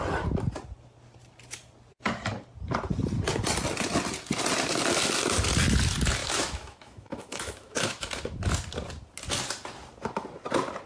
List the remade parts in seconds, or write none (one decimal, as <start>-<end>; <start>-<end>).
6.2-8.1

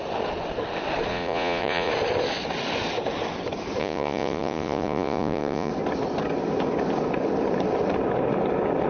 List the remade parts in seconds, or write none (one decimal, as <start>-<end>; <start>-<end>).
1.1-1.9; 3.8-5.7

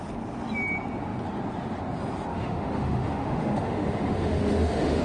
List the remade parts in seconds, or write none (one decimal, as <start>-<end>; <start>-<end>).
2.3-5.0

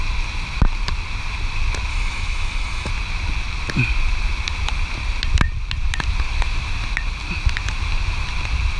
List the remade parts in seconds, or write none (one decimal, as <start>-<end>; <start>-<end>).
1.9-2.9

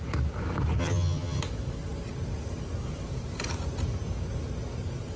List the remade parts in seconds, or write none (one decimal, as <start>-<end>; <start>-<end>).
0.8-1.4

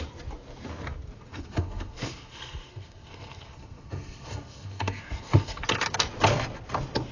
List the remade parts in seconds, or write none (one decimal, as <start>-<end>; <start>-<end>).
1.3-5.6

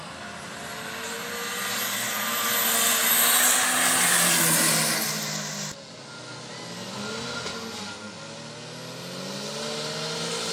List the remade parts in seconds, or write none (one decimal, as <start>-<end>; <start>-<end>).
none